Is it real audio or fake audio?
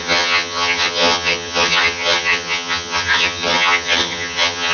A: fake